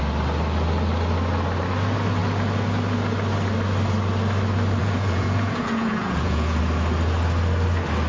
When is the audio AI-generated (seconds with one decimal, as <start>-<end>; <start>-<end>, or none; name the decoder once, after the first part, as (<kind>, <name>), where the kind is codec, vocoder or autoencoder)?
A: 4.8-6.6 (vocoder, Vocos)